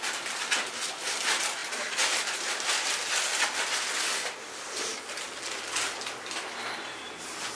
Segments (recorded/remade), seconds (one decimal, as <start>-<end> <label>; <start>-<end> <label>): 0.0-7.5 recorded